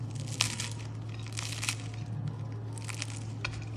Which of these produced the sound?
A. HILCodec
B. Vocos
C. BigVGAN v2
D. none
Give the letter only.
D